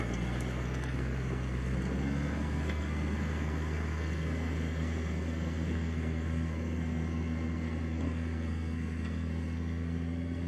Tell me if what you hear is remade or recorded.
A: remade